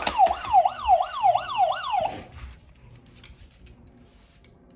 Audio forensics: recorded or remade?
remade